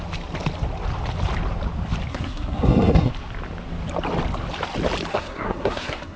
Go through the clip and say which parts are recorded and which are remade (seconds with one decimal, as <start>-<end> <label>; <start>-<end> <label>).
0.0-2.1 recorded; 2.1-3.1 remade; 3.1-5.1 recorded; 5.1-6.2 remade